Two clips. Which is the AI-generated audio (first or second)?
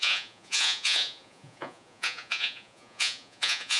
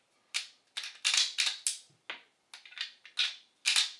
first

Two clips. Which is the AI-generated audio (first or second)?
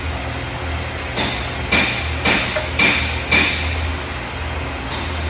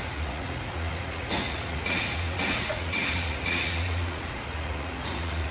second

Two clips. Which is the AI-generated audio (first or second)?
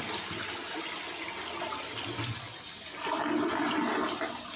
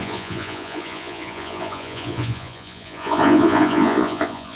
second